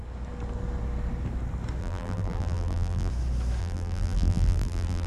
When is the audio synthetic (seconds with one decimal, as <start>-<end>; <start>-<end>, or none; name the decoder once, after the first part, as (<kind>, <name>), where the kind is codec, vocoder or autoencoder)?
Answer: 1.8-3.1 (vocoder, BigVGAN v2); 3.6-5.1